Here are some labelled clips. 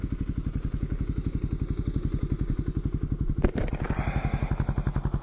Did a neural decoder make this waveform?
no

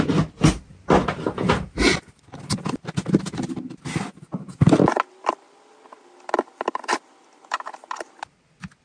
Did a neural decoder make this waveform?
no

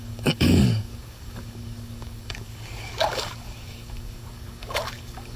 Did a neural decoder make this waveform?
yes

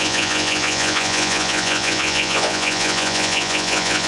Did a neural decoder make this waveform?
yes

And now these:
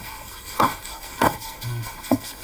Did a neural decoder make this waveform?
yes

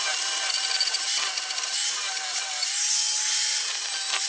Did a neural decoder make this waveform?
no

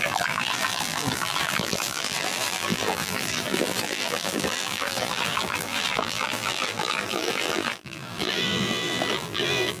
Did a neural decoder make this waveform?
yes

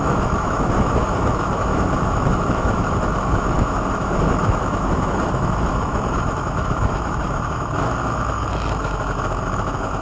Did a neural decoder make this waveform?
yes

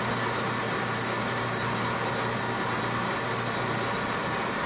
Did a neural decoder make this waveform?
no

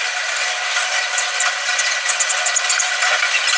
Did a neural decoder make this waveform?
no